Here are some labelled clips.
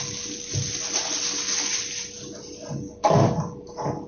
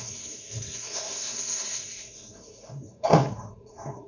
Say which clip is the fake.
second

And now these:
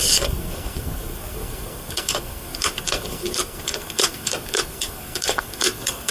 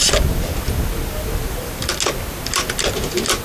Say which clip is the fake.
first